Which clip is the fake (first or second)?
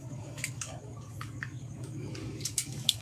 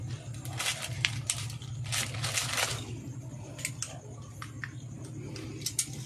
first